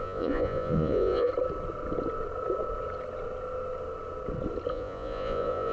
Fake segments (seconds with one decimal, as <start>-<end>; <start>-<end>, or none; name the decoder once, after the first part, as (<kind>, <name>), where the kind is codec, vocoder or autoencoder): 0.0-1.3 (vocoder, Vocos); 4.7-5.7